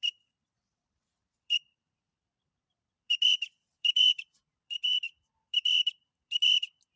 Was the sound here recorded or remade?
remade